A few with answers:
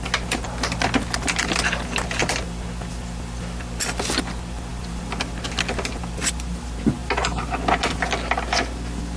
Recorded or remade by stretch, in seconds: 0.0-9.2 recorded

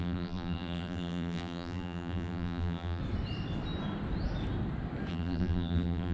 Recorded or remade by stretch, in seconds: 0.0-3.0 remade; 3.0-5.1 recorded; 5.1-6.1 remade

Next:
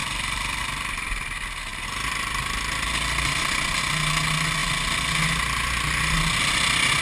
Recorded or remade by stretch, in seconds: 0.0-0.6 remade; 0.6-7.0 recorded